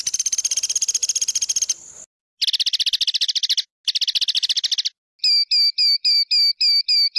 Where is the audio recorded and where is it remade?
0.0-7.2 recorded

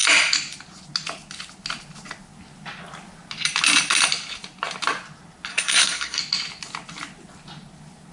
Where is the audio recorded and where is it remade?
0.0-5.5 recorded; 5.5-6.2 remade; 6.2-8.1 recorded

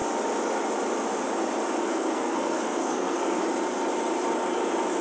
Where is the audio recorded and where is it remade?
0.0-1.8 recorded; 1.8-3.4 remade; 3.4-5.0 recorded